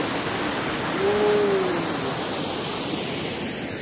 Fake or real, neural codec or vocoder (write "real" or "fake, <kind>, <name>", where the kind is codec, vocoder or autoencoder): real